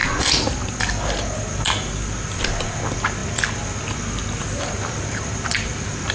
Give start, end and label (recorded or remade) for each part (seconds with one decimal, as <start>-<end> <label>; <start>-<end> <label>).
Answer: 0.0-6.1 recorded